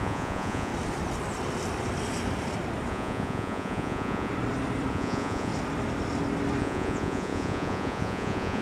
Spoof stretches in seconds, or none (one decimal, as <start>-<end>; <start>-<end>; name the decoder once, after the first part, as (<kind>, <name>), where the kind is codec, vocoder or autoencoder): 0.0-0.7 (vocoder, Vocos); 2.9-4.3; 4.9-5.5; 6.6-8.6